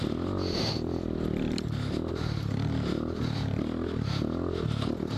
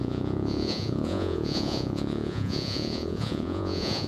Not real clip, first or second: second